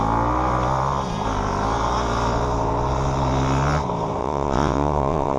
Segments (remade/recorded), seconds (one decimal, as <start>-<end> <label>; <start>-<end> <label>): 0.0-4.2 recorded; 4.2-5.4 remade